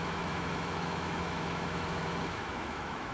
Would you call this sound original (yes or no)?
no